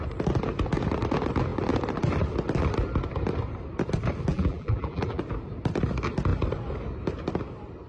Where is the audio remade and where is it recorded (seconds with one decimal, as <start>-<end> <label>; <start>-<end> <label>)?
0.0-4.3 recorded; 4.3-5.2 remade; 5.2-7.9 recorded

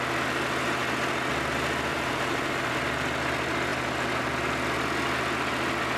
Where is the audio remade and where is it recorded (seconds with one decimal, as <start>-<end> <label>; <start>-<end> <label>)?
0.0-1.9 recorded; 1.9-2.7 remade; 2.7-6.0 recorded